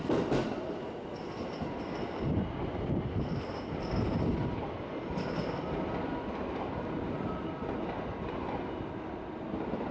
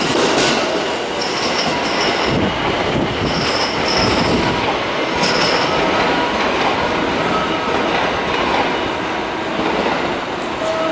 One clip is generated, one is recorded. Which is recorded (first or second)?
second